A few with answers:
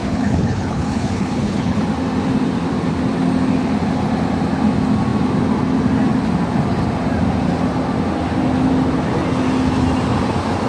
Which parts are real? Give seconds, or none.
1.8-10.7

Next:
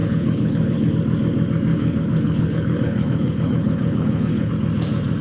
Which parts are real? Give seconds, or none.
0.9-1.7; 4.5-5.2

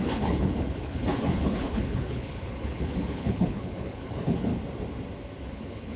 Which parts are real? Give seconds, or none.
4.5-5.4

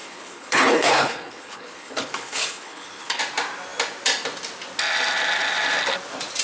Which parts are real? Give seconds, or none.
3.2-6.4